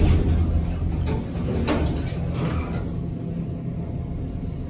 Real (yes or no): yes